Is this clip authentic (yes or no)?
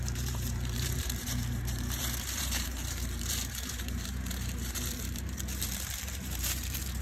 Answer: no